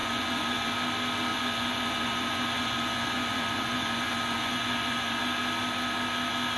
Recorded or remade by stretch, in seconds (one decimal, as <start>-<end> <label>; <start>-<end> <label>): 0.0-0.7 remade; 0.7-1.3 recorded; 1.3-5.2 remade; 5.2-6.6 recorded